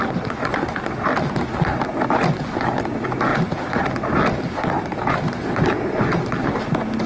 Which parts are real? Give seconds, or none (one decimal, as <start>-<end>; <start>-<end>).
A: 0.0-3.3; 6.0-7.1